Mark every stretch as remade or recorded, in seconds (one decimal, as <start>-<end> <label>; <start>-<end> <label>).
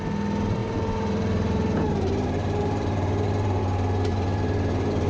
0.0-0.6 recorded; 0.6-3.6 remade; 3.6-4.1 recorded; 4.1-5.1 remade